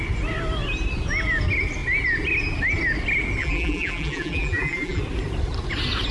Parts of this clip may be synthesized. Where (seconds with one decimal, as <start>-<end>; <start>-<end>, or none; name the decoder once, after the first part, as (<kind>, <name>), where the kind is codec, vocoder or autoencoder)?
3.4-5.0 (vocoder, BigVGAN v2)